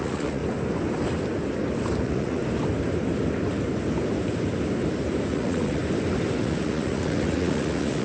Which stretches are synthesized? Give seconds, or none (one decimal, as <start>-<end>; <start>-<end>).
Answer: 0.0-0.4; 2.0-2.4; 5.3-5.8; 6.4-8.0